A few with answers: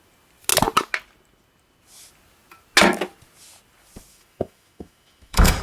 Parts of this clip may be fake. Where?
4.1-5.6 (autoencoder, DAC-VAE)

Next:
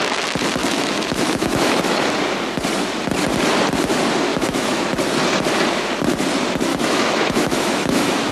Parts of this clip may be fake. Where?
0.6-1.8 (autoencoder, DAC-VAE); 4.3-4.8; 6.7-8.3

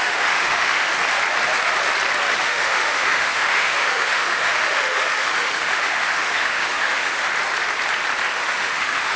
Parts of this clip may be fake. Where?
0.0-0.9 (autoencoder, DAC-VAE); 2.4-7.3; 8.3-9.2

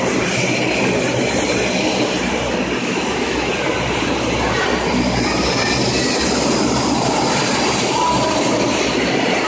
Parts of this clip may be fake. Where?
2.8-3.5 (autoencoder, DAC-VAE)

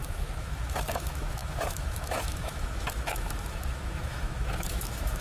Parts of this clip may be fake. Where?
0.0-5.2 (autoencoder, DAC-VAE)

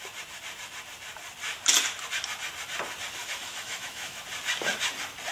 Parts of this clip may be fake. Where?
3.2-4.2 (autoencoder, DAC-VAE)